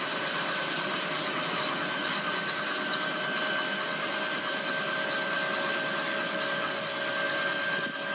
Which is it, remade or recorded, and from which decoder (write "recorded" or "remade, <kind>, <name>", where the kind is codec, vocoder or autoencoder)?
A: recorded